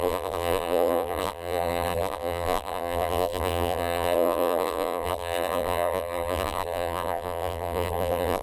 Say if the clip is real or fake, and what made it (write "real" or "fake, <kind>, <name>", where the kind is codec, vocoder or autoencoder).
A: fake, vocoder, BigVGAN v2